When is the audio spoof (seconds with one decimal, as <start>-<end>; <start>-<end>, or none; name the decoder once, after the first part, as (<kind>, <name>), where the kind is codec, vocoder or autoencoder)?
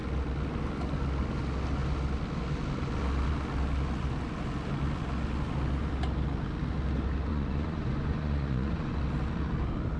7.3-9.0 (vocoder, Vocos)